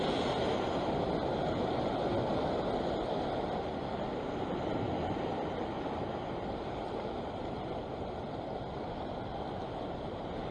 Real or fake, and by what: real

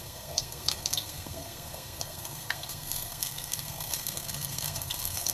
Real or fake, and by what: fake, codec, SNAC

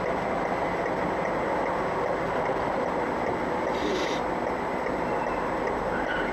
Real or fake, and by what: real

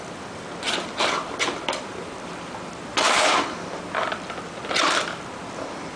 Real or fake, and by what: fake, vocoder, BigVGAN v2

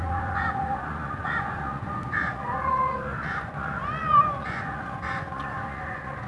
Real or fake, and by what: fake, vocoder, Vocos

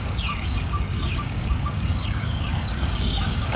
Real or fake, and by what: fake, codec, DAC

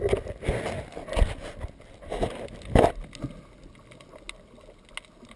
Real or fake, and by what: real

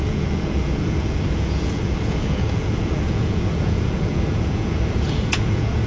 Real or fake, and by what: fake, vocoder, Vocos